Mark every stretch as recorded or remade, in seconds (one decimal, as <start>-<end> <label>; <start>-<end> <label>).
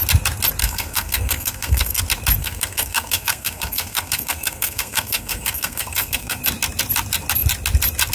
0.0-0.6 recorded; 0.6-2.0 remade; 2.0-2.4 recorded; 2.4-6.4 remade; 6.4-8.1 recorded